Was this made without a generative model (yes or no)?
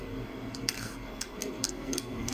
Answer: no